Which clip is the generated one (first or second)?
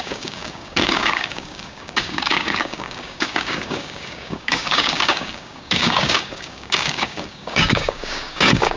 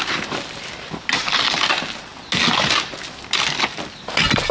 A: first